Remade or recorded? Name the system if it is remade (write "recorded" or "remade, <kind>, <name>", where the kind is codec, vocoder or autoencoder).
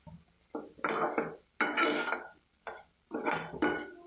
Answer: recorded